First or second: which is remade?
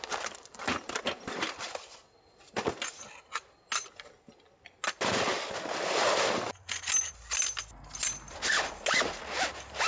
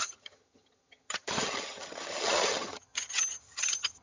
second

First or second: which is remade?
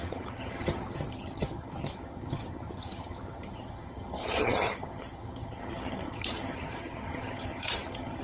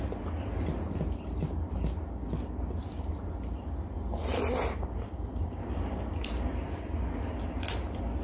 first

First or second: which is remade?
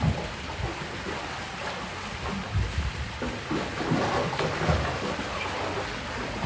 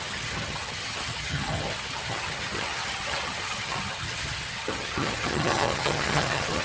second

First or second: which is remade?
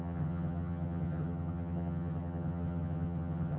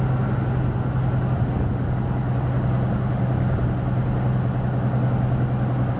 first